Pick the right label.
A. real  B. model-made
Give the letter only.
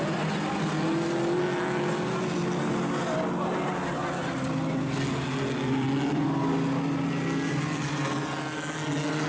A